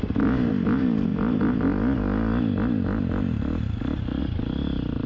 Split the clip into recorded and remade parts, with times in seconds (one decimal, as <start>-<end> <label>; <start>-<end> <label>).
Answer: 0.0-5.1 recorded